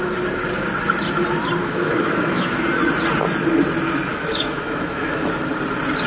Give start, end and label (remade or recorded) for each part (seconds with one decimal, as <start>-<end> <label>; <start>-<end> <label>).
0.0-1.6 recorded; 1.6-2.5 remade; 2.5-4.1 recorded; 4.1-5.5 remade; 5.5-6.1 recorded